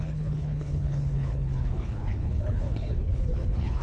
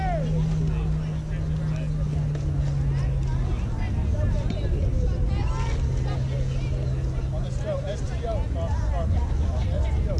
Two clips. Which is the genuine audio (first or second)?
second